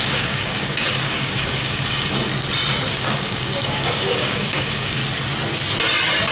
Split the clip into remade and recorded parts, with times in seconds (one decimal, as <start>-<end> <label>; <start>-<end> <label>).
0.0-2.3 remade; 2.3-2.9 recorded; 2.9-5.0 remade; 5.0-6.3 recorded